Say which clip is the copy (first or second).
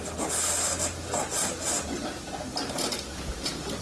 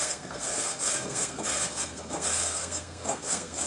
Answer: second